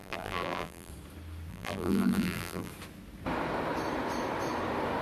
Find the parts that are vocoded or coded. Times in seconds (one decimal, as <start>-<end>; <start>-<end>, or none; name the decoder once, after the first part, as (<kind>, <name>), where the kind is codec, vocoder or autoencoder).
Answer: 0.0-0.9 (vocoder, BigVGAN v2); 1.5-2.7